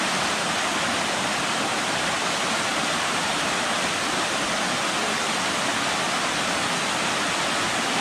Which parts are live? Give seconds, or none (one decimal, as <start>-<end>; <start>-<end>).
0.0-2.7; 3.5-8.0